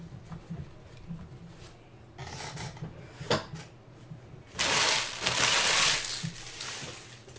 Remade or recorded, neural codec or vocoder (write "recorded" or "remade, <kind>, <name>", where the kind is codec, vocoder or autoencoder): recorded